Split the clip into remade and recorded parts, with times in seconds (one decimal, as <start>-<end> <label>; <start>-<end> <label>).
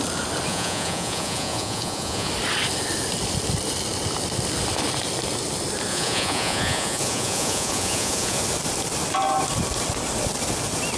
0.0-0.5 recorded; 0.5-2.3 remade; 2.3-5.9 recorded; 5.9-8.4 remade; 8.4-11.0 recorded